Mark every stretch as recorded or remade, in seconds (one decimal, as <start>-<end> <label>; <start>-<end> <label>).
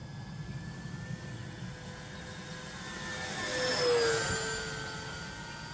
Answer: 0.0-5.7 recorded